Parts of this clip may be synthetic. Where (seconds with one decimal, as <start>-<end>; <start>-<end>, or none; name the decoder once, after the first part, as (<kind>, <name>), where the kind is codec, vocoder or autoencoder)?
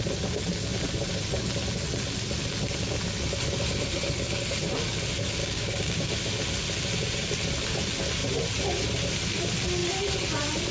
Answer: 5.4-6.1 (codec, DAC)